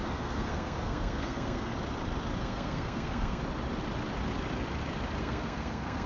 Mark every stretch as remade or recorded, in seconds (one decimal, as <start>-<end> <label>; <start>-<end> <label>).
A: 0.0-1.7 remade; 1.7-2.4 recorded; 2.4-3.4 remade; 3.4-5.2 recorded; 5.2-6.1 remade

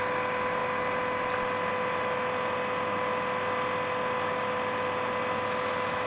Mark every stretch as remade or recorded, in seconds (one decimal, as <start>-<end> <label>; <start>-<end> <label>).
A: 0.0-6.1 recorded

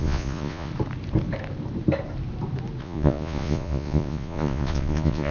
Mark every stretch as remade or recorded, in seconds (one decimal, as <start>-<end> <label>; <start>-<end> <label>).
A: 0.0-0.7 remade; 0.7-2.8 recorded; 2.8-5.3 remade

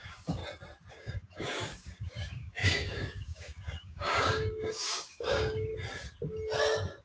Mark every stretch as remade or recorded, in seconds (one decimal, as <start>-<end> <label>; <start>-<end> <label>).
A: 0.0-0.4 remade; 0.4-0.9 recorded; 0.9-5.7 remade; 5.7-7.0 recorded